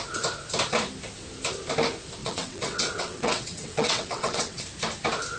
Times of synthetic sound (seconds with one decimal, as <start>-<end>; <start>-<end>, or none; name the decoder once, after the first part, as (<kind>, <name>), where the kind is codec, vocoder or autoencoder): 2.2-4.6 (vocoder, WaveNeXt)